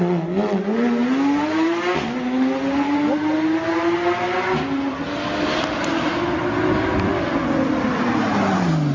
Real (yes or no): yes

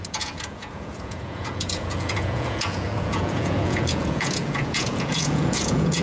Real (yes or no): no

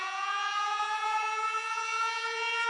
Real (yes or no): no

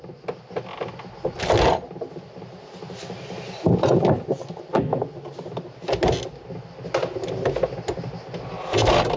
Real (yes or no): yes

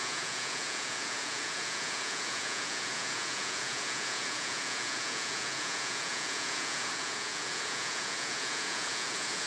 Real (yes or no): no